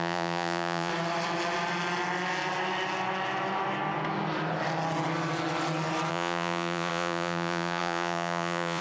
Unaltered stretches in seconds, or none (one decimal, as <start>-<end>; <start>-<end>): 0.9-6.1